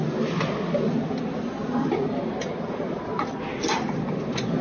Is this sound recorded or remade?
recorded